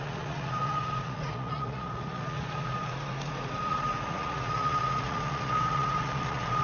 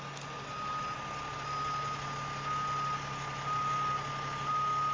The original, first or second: second